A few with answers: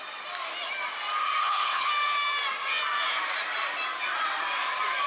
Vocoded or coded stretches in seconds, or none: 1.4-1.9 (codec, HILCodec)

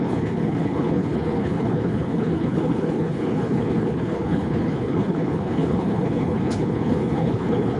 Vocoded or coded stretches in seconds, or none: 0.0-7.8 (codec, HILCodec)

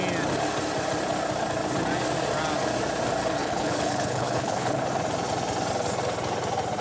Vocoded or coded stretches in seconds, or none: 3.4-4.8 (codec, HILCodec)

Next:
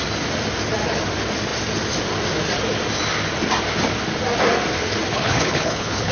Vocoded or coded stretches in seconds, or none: 5.1-6.1 (codec, HILCodec)

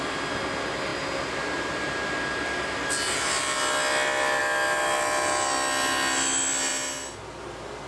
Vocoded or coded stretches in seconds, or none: none

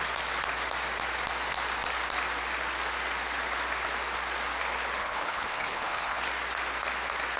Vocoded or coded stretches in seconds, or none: 5.0-6.2 (codec, HILCodec)